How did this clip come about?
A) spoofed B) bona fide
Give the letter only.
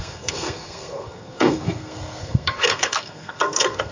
A